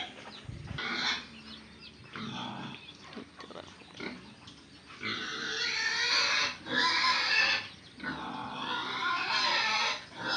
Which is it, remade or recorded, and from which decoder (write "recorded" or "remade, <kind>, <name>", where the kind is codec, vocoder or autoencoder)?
recorded